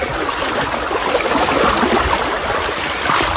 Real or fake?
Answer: real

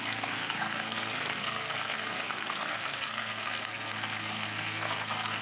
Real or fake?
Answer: fake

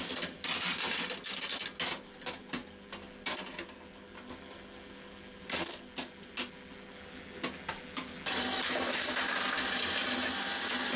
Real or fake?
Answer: real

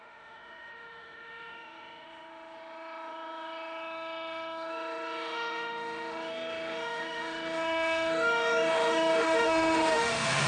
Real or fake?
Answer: fake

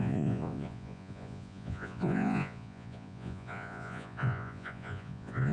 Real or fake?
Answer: fake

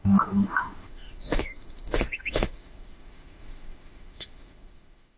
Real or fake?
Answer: fake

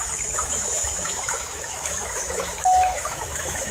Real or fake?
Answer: fake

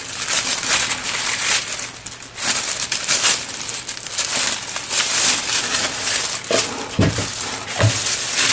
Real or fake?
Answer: fake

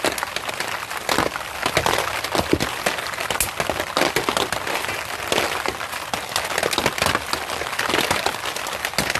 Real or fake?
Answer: real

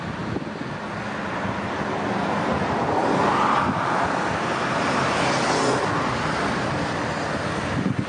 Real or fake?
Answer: real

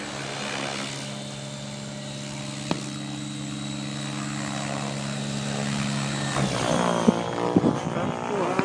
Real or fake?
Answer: real